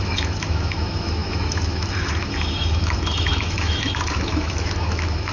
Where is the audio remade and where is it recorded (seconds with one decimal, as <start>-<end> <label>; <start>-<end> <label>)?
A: 0.0-5.3 remade